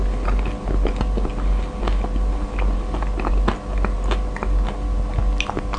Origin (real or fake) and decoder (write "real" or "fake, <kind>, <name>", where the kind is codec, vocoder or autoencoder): real